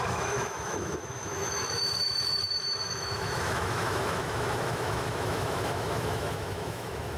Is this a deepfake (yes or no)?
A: yes